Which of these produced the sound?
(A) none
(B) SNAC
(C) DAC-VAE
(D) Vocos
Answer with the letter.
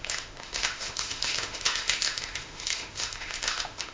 C